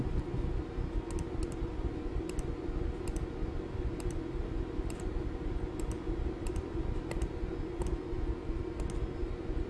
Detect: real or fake real